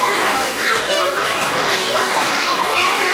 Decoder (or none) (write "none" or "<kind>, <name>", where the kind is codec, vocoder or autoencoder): codec, DAC